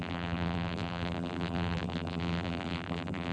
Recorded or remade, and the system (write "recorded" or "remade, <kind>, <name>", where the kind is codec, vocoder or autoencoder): remade, vocoder, BigVGAN v2